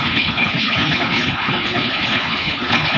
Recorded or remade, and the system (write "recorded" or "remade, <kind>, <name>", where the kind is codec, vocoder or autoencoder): remade, codec, HILCodec